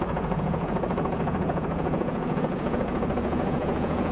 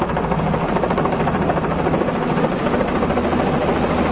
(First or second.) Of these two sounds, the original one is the second